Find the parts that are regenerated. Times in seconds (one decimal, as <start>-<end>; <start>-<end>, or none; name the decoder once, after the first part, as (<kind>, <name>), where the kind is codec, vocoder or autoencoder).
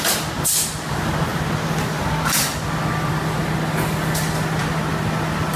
none